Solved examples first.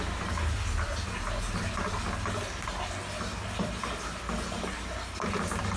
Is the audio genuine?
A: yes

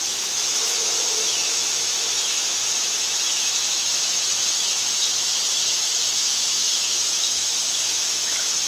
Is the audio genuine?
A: no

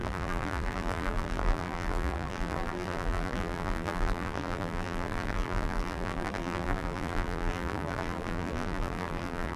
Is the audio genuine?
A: no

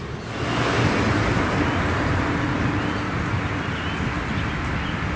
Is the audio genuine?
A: yes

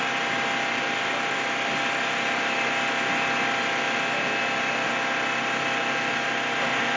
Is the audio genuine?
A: yes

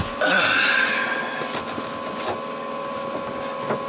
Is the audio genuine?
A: yes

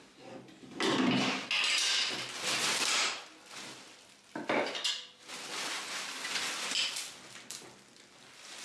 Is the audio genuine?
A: yes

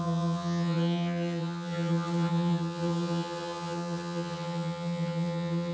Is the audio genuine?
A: no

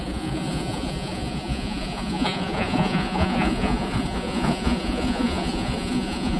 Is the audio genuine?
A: no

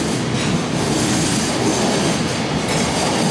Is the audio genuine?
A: yes